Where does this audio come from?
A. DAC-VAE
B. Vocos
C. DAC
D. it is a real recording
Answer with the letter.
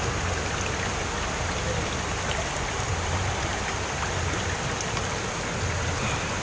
D